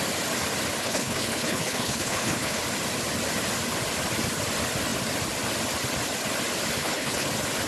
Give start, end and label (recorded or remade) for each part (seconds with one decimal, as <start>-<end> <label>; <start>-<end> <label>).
0.0-0.8 recorded; 0.8-2.6 remade; 2.6-6.8 recorded; 6.8-7.3 remade; 7.3-7.7 recorded